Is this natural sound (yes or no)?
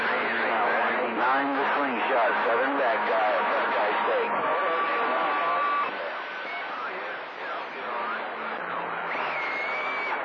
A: yes